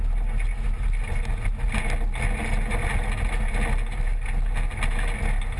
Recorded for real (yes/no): yes